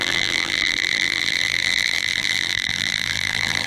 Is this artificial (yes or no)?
yes